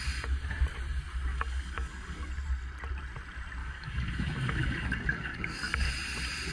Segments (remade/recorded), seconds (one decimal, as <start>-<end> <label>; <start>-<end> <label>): 0.0-1.3 recorded; 1.3-2.3 remade; 2.3-3.6 recorded; 3.6-5.9 remade; 5.9-6.5 recorded